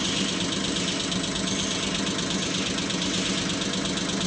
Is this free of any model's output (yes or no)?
yes